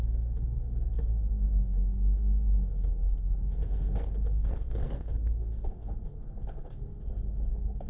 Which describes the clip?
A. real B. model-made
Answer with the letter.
B